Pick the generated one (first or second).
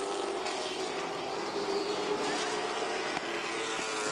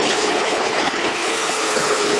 second